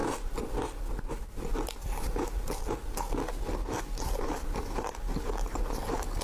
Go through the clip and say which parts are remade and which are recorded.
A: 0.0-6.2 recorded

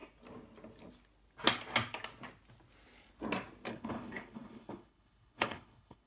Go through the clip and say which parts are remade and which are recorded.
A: 0.0-3.7 recorded; 3.7-6.1 remade

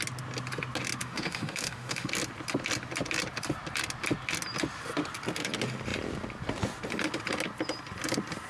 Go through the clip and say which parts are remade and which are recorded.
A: 0.0-1.0 recorded; 1.0-2.1 remade; 2.1-8.5 recorded

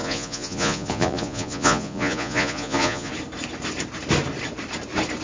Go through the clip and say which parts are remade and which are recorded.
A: 0.0-3.1 remade; 3.1-5.2 recorded

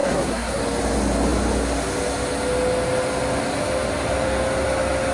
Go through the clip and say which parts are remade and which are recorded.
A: 0.0-0.6 remade; 0.6-5.1 recorded

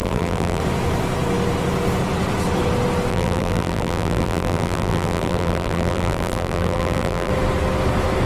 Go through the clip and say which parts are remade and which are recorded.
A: 0.0-0.6 remade; 0.6-3.1 recorded; 3.1-7.3 remade; 7.3-8.2 recorded

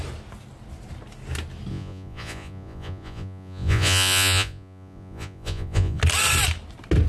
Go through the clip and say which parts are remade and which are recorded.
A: 0.0-1.7 recorded; 1.7-6.0 remade; 6.0-7.1 recorded